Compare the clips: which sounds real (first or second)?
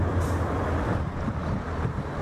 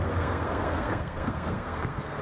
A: first